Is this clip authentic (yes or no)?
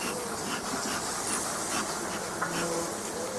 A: yes